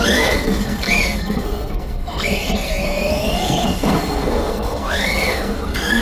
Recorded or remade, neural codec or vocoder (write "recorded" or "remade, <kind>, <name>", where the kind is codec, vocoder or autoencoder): remade, codec, SNAC